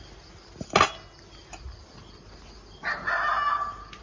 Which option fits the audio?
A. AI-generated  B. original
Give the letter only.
B